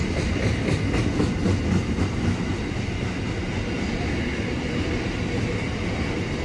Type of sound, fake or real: real